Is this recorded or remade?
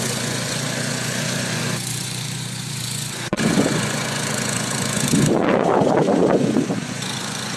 remade